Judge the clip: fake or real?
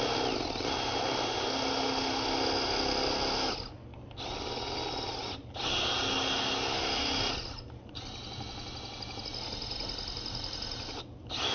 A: real